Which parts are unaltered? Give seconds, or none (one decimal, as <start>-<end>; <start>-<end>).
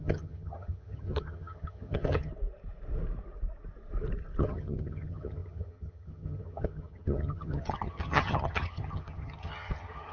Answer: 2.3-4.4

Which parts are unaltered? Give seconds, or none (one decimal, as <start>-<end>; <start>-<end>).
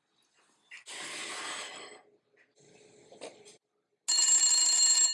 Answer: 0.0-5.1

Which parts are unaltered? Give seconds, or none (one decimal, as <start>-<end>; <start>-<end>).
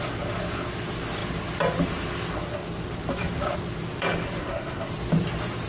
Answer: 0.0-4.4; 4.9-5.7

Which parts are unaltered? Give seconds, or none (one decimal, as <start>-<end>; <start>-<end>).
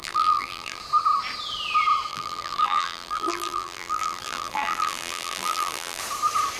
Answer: 0.8-2.1; 6.0-6.6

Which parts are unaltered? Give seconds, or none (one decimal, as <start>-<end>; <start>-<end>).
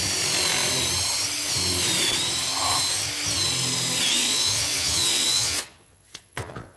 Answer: 0.0-4.1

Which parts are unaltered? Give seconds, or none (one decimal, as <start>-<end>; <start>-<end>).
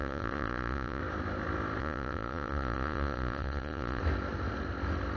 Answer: 1.0-1.8; 4.0-5.2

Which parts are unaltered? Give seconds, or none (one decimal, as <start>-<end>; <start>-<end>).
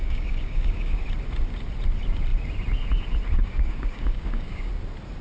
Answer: 1.0-3.4; 4.7-5.2